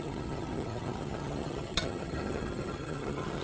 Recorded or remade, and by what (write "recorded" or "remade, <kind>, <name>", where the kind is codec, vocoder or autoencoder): remade, vocoder, HiFi-GAN